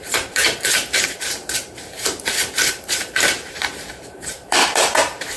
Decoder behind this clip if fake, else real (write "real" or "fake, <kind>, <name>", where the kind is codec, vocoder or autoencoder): fake, vocoder, BigVGAN v2